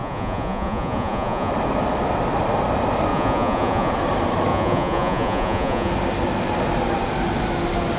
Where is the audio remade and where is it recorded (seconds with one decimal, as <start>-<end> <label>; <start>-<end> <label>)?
0.0-1.5 remade; 1.5-3.1 recorded; 3.1-3.9 remade; 3.9-4.5 recorded; 4.5-5.9 remade; 5.9-8.0 recorded